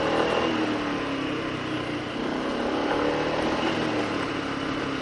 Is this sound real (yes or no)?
yes